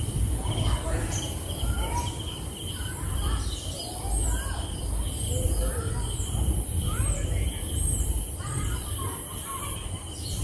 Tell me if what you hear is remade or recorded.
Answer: remade